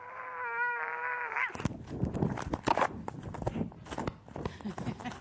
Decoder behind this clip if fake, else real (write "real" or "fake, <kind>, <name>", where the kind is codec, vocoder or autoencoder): real